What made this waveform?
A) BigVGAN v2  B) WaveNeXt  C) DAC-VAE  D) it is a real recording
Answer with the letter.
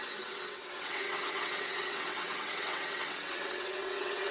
B